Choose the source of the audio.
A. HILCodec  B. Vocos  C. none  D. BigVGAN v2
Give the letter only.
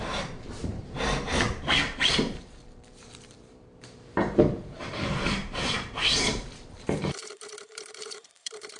D